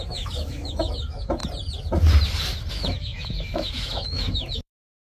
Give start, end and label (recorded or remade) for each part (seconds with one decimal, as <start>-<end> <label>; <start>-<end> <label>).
0.0-1.4 remade; 1.4-2.7 recorded; 2.7-5.0 remade